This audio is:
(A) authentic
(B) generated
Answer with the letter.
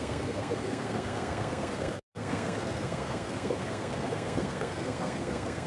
B